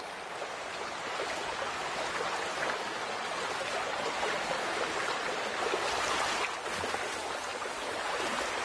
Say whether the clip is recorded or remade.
recorded